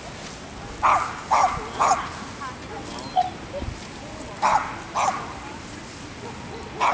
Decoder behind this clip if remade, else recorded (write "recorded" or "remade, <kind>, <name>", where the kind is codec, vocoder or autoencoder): recorded